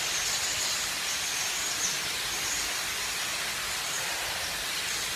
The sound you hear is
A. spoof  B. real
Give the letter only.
B